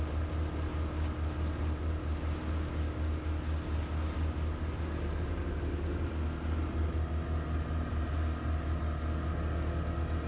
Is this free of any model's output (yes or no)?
yes